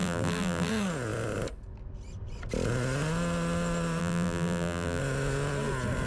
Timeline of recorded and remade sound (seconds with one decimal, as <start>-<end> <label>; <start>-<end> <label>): 0.0-0.7 remade; 0.7-4.0 recorded; 4.0-5.0 remade; 5.0-6.1 recorded